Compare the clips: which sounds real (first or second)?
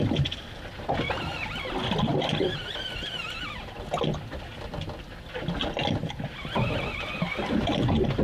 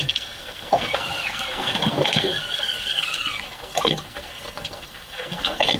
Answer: first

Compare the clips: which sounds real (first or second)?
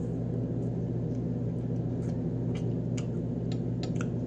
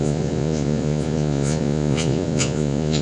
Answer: first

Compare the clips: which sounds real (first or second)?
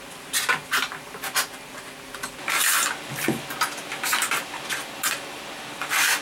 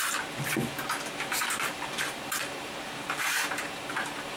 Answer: first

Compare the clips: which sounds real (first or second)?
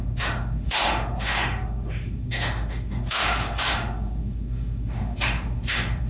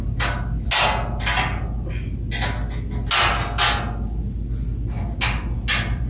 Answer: second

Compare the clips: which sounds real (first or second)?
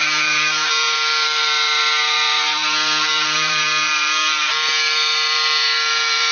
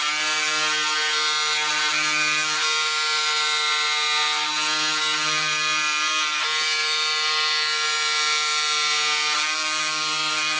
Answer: second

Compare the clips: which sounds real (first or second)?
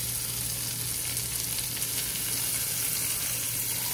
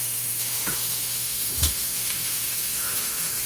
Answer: first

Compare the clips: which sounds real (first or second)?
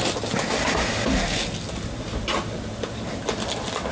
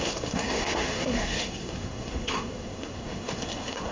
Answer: first